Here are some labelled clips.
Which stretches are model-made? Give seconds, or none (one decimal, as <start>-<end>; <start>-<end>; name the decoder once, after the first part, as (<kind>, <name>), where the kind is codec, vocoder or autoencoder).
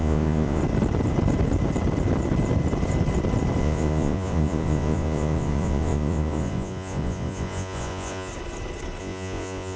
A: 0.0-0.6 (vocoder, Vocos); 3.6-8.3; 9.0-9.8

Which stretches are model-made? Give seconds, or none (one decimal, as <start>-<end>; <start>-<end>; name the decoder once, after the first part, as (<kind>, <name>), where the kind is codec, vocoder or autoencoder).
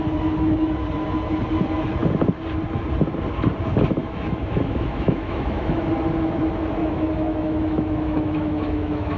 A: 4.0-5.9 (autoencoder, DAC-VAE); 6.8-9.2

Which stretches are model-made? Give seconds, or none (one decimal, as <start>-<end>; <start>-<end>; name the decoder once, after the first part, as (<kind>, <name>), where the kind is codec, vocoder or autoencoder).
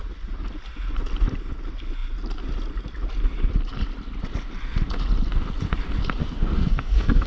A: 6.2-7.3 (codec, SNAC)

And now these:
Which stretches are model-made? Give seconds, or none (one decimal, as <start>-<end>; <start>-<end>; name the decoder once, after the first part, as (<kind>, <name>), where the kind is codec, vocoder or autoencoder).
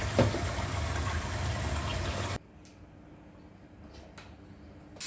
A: none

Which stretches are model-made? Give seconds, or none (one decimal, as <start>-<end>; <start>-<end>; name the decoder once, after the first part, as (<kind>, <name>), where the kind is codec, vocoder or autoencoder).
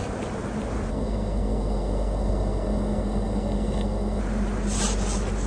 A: 0.9-4.2 (codec, SNAC)